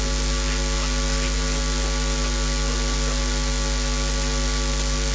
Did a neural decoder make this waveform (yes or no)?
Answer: no